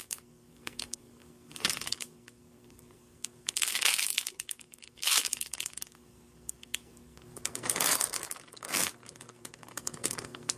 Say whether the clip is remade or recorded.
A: remade